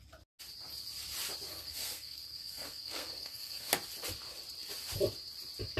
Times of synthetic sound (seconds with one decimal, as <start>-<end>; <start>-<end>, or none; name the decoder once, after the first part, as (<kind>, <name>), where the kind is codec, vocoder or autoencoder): 1.5-3.7 (codec, SNAC)